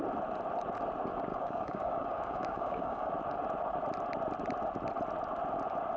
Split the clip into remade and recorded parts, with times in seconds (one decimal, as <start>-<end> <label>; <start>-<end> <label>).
0.0-1.3 recorded; 1.3-3.1 remade; 3.1-6.0 recorded